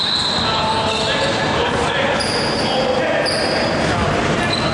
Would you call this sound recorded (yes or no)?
yes